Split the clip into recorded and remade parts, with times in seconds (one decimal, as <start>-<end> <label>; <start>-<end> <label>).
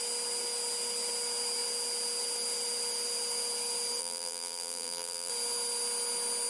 0.0-4.0 recorded; 4.0-5.3 remade; 5.3-6.5 recorded